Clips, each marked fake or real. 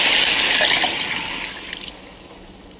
real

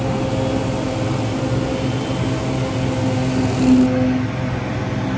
real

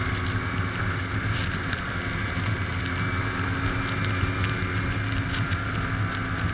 real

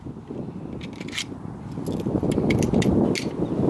real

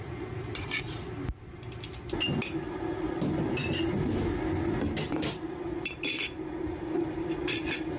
real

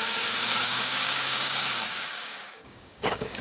fake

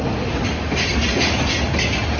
real